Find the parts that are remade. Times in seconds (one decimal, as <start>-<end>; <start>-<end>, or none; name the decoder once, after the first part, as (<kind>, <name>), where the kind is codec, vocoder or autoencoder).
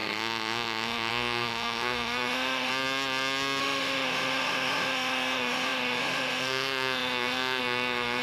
0.0-2.7 (autoencoder, DAC-VAE); 3.6-8.2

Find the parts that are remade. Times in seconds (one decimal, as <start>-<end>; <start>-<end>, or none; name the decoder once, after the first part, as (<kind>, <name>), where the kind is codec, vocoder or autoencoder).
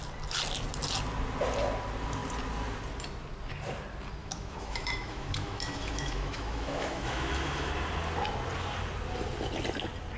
4.2-7.7 (autoencoder, DAC-VAE)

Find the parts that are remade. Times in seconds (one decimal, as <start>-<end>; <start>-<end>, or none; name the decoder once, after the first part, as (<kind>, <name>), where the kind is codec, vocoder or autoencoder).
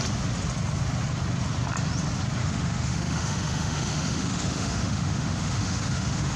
2.4-6.4 (autoencoder, DAC-VAE)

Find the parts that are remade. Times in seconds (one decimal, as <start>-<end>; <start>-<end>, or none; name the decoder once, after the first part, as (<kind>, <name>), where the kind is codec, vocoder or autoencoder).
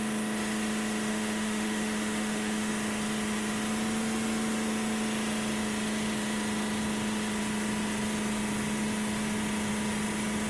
1.1-2.7 (autoencoder, DAC-VAE)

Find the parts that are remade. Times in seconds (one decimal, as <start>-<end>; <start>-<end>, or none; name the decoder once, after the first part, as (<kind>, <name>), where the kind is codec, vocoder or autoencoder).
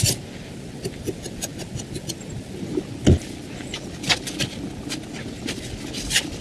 none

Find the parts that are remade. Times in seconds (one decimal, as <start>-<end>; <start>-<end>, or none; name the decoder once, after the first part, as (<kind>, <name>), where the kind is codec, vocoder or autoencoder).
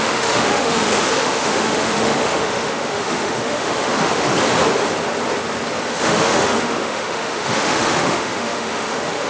0.0-4.3 (autoencoder, DAC-VAE); 6.0-9.3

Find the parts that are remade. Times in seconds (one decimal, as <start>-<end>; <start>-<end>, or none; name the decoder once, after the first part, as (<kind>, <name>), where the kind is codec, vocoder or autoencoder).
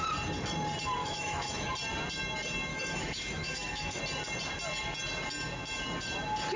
1.0-1.7 (autoencoder, DAC-VAE); 2.7-4.0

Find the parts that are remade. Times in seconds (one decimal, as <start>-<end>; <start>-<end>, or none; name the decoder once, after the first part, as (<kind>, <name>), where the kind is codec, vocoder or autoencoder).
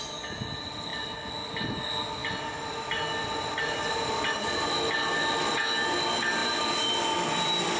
none